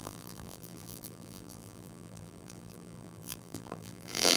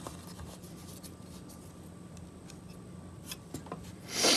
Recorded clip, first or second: second